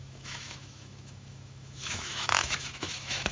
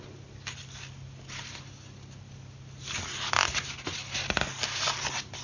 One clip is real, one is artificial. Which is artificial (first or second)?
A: first